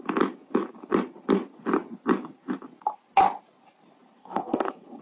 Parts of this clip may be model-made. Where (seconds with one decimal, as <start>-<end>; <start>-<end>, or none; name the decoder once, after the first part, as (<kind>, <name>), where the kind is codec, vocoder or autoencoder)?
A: 4.2-5.0 (codec, SNAC)